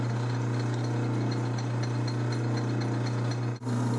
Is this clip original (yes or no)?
yes